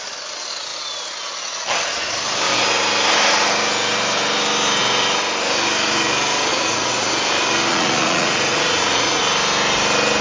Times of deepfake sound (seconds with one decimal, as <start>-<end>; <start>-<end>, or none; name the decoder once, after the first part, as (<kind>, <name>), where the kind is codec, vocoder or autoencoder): 6.5-7.1 (vocoder, Vocos); 7.7-9.2

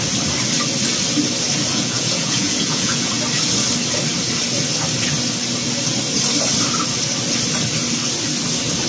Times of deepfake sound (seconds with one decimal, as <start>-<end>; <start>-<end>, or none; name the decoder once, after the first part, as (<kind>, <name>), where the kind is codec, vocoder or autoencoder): 1.7-3.1 (vocoder, Vocos)

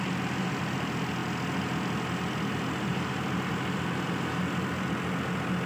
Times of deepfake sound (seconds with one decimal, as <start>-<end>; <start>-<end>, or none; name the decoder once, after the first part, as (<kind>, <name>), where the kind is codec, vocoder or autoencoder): 2.9-4.4 (vocoder, BigVGAN v2)

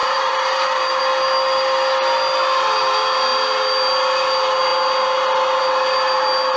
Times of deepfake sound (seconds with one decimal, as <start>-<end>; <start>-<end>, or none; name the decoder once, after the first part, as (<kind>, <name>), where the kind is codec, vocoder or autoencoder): 0.0-1.0 (vocoder, BigVGAN v2)

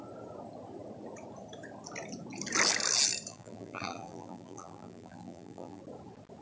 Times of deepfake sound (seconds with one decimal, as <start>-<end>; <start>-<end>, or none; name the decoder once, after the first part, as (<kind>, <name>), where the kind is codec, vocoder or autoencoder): 3.3-5.8 (vocoder, BigVGAN v2)

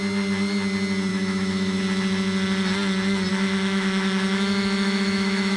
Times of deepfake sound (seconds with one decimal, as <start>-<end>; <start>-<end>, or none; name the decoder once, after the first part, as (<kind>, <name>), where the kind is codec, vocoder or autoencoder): 1.1-1.8 (autoencoder, DAC-VAE); 3.3-5.6

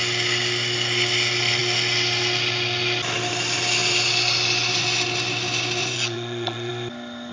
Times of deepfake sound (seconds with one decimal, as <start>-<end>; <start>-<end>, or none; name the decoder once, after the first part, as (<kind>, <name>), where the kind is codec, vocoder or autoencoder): 5.8-6.7 (vocoder, Vocos)